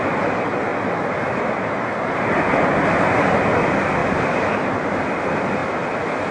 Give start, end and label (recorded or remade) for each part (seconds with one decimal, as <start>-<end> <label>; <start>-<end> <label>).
0.0-0.7 recorded; 0.7-3.3 remade; 3.3-4.0 recorded; 4.0-5.1 remade; 5.1-6.3 recorded